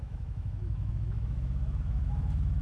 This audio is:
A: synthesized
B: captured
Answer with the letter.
A